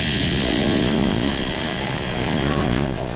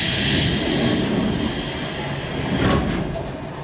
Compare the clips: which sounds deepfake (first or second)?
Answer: first